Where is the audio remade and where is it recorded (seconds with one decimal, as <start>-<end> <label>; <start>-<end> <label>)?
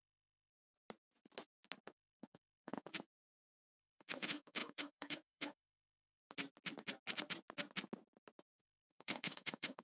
0.0-0.5 remade; 0.5-1.8 recorded; 1.8-2.9 remade; 2.9-3.8 recorded; 3.8-6.2 remade; 6.2-8.5 recorded; 8.5-9.8 remade